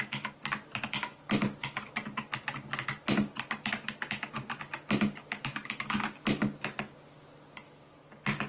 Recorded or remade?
recorded